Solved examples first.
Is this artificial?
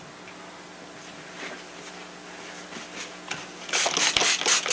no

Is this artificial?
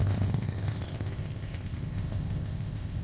yes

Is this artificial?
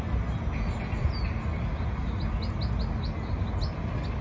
no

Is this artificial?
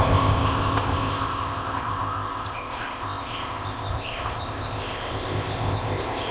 yes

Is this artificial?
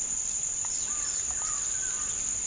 no